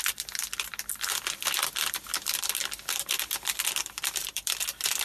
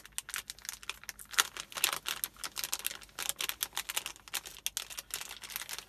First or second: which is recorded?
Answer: second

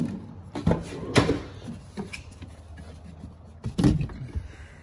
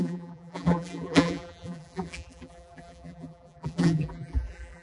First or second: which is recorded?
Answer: first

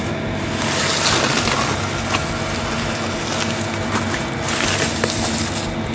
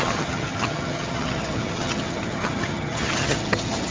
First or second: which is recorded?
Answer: first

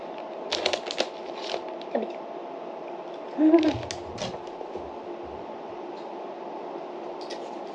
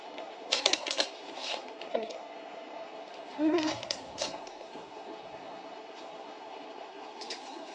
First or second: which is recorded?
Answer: first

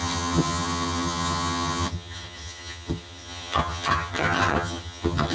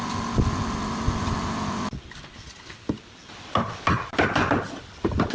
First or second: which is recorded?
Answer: second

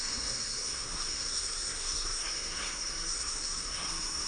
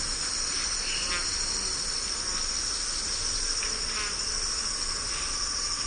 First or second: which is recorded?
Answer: second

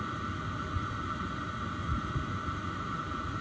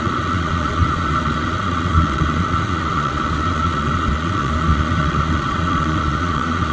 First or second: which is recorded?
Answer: first